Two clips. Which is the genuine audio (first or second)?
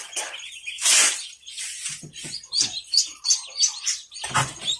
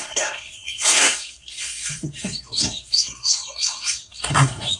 first